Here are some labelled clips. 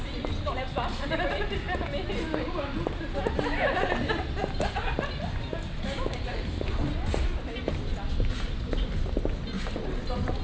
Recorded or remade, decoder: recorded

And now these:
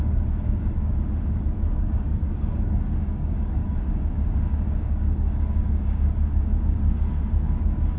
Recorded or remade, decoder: remade, codec, DAC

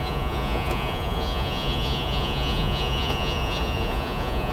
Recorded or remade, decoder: remade, vocoder, Vocos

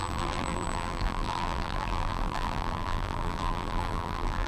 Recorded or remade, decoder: remade, vocoder, BigVGAN v2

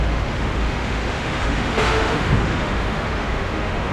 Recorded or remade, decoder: remade, autoencoder, DAC-VAE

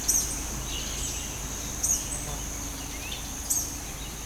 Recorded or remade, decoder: recorded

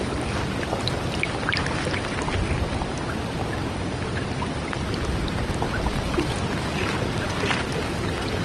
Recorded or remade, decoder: recorded